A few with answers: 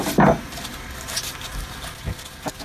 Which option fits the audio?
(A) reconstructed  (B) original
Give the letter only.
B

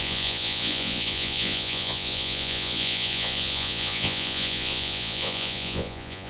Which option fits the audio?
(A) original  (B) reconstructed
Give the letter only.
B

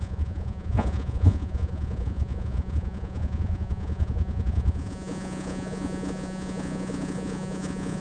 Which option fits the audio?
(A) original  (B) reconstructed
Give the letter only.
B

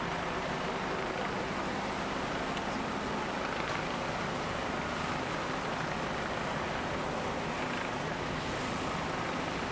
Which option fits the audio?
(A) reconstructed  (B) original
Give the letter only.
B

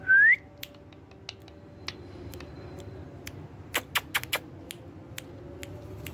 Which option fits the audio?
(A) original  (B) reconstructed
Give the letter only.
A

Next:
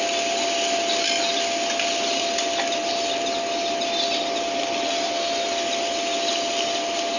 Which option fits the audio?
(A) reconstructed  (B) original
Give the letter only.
A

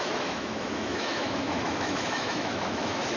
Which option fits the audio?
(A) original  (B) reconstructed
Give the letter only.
B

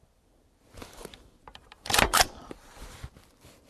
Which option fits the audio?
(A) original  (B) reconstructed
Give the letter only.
B